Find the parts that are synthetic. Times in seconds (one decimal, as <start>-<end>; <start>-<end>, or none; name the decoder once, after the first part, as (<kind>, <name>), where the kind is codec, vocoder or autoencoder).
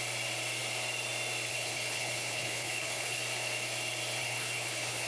1.5-3.2 (codec, HILCodec); 4.2-5.1